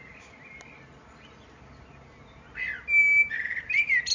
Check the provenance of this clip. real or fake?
real